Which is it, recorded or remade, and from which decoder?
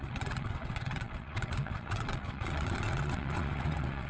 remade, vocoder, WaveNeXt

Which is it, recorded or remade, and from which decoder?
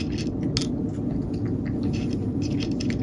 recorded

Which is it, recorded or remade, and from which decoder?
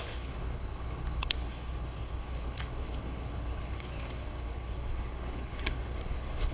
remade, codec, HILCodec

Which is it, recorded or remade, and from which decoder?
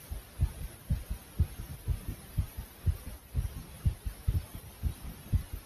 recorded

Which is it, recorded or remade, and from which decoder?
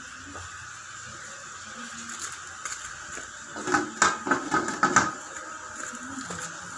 recorded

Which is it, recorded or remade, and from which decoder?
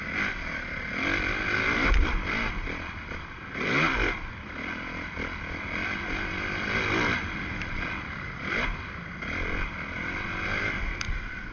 recorded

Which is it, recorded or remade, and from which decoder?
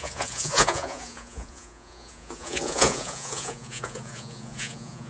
remade, vocoder, Vocos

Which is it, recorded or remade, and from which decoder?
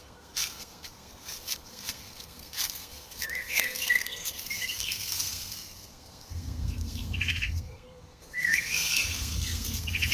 remade, codec, SNAC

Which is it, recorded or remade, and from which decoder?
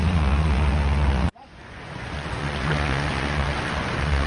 remade, vocoder, Vocos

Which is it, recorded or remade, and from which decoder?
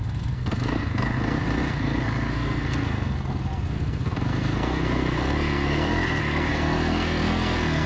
remade, codec, SNAC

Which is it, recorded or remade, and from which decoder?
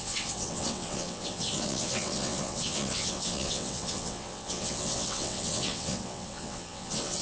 remade, vocoder, WaveNeXt